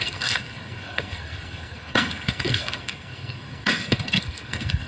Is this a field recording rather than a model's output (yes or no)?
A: no